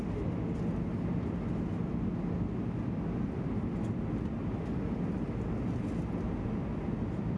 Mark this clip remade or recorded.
recorded